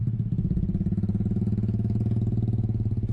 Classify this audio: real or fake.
real